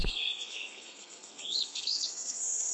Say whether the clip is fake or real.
fake